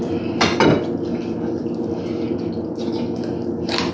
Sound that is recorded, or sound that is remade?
recorded